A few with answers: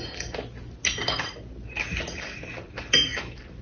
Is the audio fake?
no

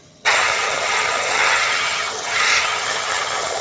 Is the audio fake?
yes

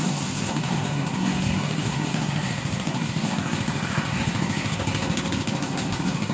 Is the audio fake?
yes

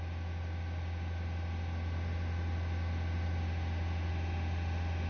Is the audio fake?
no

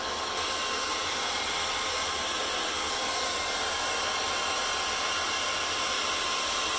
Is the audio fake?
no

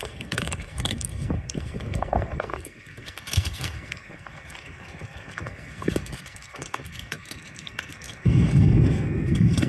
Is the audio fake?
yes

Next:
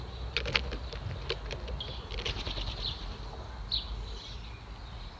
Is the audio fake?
no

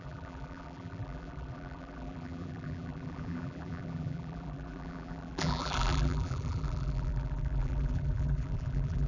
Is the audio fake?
yes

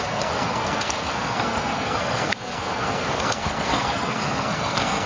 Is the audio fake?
yes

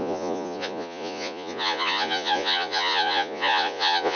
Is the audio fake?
yes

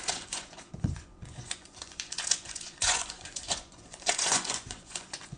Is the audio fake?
yes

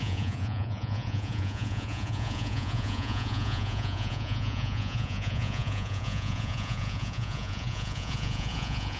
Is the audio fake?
yes